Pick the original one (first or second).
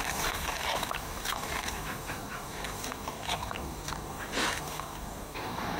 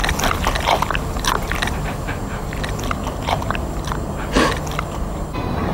second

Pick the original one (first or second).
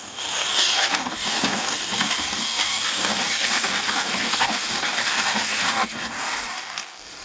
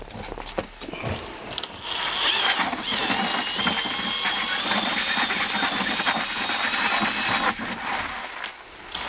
second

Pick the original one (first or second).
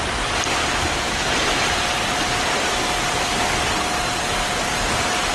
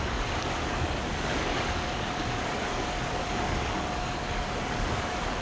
first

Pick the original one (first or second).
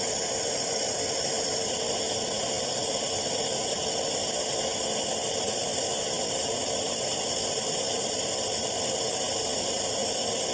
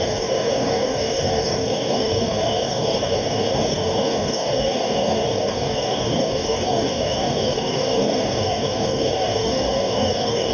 first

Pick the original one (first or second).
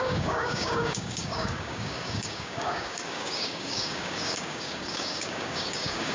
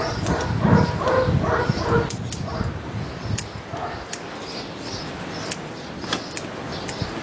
second